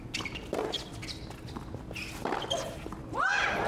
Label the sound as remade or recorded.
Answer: recorded